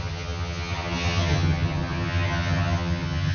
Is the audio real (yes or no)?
no